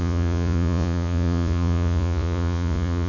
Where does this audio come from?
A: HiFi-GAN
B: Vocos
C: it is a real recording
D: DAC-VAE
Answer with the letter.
B